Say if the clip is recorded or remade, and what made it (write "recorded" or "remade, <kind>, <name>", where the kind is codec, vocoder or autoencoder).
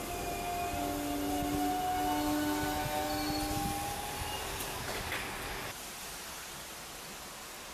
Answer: recorded